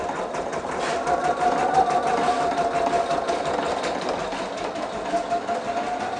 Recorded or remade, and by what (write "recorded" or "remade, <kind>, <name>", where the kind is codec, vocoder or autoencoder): recorded